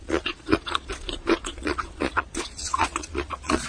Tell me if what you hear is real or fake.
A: fake